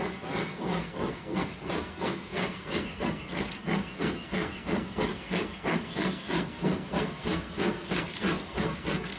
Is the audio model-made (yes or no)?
yes